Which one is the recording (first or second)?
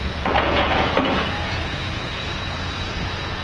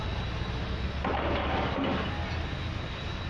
second